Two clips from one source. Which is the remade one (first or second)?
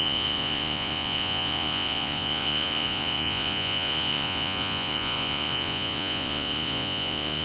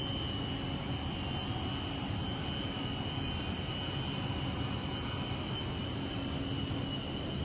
first